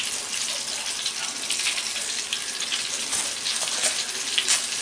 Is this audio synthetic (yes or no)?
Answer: no